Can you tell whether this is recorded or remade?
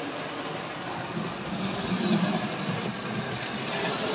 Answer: recorded